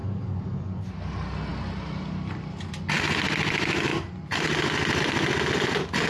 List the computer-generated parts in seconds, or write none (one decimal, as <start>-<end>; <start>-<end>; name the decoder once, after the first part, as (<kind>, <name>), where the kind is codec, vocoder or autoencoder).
0.0-0.9 (codec, DAC)